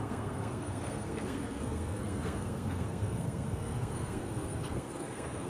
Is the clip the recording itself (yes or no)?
no